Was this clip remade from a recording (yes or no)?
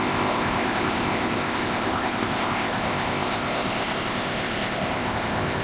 yes